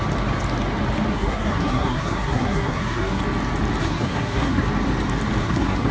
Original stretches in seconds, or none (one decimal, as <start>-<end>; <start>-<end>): 0.0-1.1; 3.2-3.8; 4.6-5.4